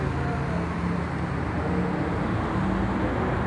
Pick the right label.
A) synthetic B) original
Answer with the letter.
B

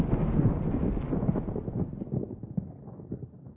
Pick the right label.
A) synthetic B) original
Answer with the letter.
B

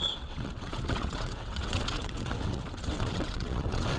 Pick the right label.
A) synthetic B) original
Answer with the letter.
A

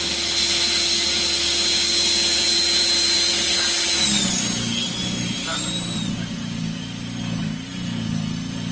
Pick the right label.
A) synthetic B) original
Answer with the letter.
B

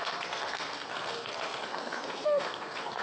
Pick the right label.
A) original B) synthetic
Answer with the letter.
B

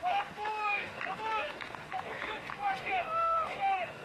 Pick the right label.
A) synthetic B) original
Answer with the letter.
A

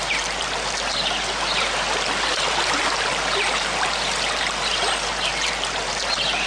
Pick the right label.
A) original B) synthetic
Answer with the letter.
A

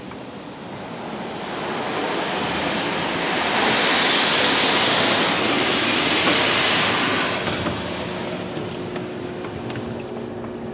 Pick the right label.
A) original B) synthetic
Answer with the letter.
A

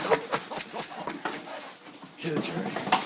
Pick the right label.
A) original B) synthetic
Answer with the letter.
A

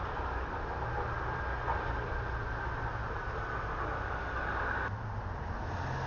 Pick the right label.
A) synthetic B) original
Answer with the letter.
B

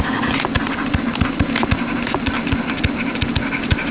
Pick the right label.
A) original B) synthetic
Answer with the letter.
A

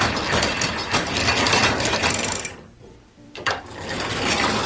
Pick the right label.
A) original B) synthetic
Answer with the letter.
B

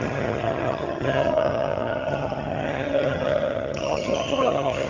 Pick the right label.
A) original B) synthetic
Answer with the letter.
B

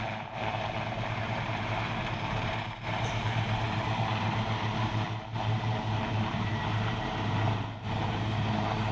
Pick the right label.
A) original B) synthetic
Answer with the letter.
B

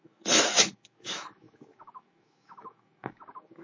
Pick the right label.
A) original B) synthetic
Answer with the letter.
B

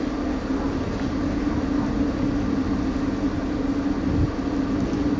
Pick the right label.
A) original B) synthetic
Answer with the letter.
A